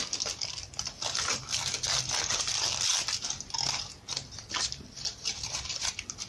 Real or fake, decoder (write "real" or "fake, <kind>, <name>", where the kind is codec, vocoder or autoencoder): real